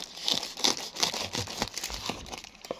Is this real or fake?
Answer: real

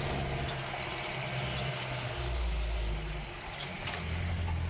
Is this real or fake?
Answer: real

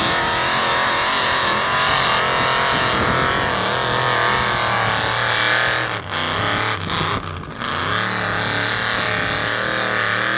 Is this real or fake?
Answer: real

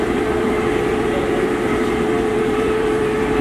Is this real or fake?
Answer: fake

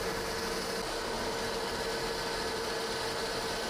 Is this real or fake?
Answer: real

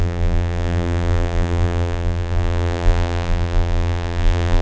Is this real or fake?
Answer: fake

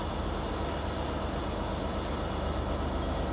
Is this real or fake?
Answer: real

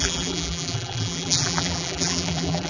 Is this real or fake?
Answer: fake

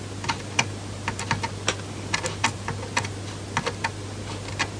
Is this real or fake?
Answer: real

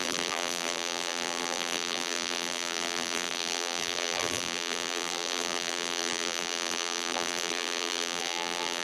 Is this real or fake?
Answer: fake